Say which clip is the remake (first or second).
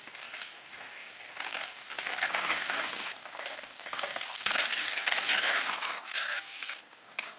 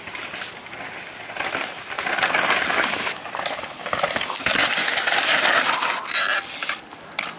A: first